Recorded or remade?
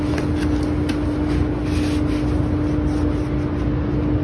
recorded